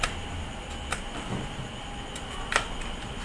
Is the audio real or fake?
fake